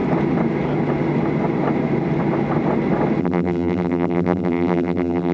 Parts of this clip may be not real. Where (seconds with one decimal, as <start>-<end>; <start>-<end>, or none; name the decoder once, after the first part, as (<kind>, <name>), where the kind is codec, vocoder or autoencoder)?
3.2-5.3 (vocoder, BigVGAN v2)